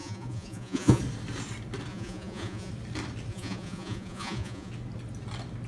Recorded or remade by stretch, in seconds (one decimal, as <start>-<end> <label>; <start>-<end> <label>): 0.0-1.0 remade; 1.0-1.9 recorded; 1.9-2.7 remade; 2.7-3.3 recorded; 3.3-4.7 remade; 4.7-5.7 recorded